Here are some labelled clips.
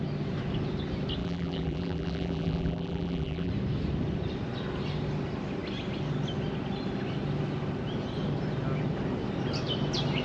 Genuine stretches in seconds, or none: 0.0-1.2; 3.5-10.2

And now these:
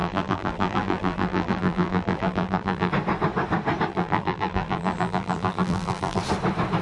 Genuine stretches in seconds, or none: 2.9-3.9; 6.2-6.8

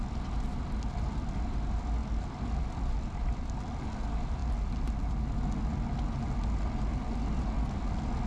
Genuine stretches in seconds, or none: 0.0-2.0; 4.0-8.3